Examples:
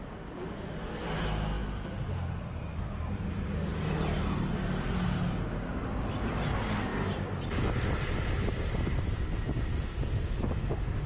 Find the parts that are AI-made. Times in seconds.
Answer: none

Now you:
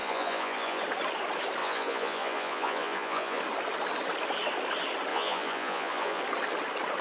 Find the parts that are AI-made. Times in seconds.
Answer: 0.0-0.8 (vocoder, Vocos); 1.6-3.4; 5.1-6.2